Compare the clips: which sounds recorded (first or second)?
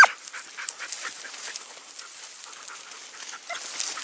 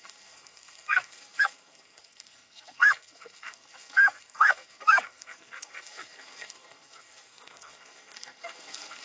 first